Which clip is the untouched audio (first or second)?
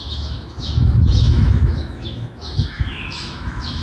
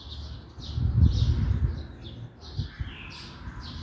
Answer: second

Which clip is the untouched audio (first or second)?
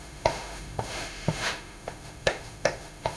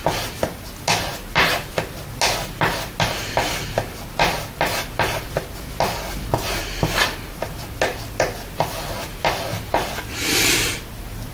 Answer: second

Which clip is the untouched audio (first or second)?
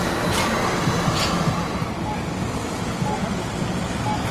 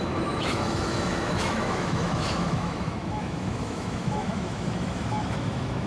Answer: first